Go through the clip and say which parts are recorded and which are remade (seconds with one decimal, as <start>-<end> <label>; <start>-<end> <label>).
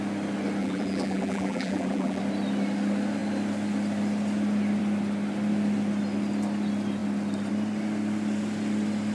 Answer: 0.0-0.6 recorded; 0.6-2.2 remade; 2.2-9.1 recorded